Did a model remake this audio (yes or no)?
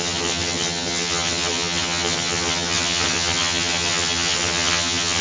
yes